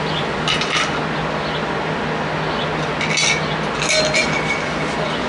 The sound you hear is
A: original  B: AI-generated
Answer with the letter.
A